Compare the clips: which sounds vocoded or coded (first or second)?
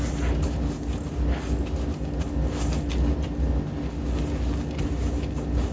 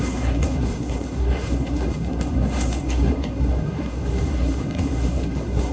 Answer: second